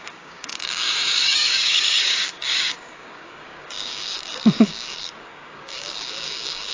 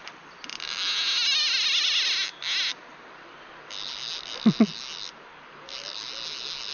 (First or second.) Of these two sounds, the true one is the second